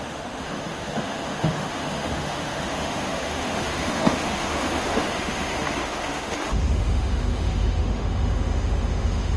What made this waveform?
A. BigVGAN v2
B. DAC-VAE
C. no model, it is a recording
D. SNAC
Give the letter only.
B